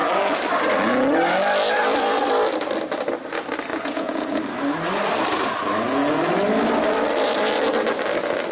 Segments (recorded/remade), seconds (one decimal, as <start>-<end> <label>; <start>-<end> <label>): 0.0-3.7 recorded; 3.7-4.4 remade; 4.4-8.5 recorded